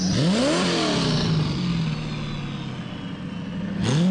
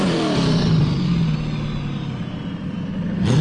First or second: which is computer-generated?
second